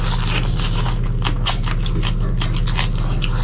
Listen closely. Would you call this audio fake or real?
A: real